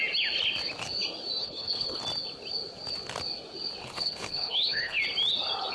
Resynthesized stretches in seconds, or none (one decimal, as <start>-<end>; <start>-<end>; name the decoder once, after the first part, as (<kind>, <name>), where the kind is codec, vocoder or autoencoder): 1.4-2.0 (codec, HILCodec); 3.8-5.0